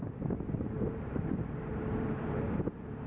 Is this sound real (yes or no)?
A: no